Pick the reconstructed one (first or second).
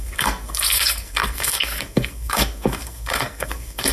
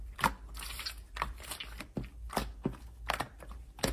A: first